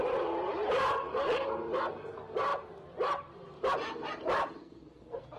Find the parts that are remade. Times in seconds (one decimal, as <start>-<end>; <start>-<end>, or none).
4.6-5.4